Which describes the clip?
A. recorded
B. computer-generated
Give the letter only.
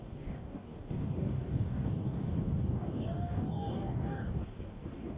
B